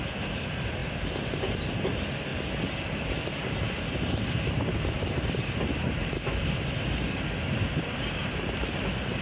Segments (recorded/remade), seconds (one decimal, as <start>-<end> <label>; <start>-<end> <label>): 0.0-9.2 recorded